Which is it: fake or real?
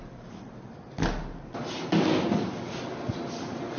real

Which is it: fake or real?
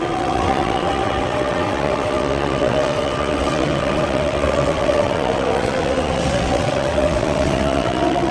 fake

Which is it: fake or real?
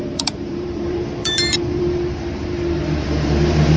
fake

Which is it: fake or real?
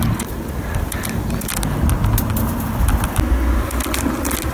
real